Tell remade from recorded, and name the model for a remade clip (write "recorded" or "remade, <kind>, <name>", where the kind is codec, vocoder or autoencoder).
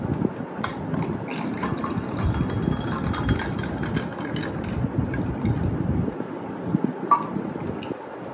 recorded